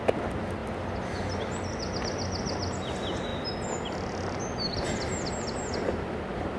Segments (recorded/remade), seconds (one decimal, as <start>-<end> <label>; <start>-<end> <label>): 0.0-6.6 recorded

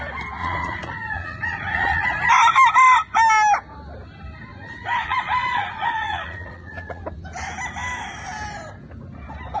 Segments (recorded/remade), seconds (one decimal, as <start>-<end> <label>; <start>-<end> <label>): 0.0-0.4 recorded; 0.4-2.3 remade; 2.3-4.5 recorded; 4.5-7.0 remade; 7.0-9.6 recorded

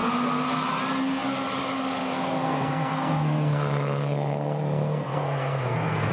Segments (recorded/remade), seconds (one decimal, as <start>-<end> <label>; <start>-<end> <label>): 0.0-2.0 recorded; 2.0-6.1 remade

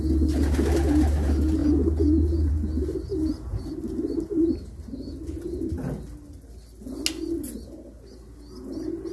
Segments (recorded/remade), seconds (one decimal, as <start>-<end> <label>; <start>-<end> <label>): 0.0-9.1 recorded

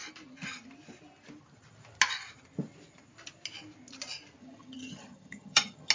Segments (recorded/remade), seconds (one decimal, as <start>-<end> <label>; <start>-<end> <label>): 0.0-4.4 recorded; 4.4-5.9 remade